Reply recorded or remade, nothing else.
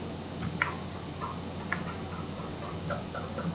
recorded